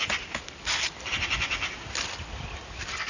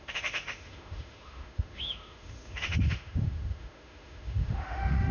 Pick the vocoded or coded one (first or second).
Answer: second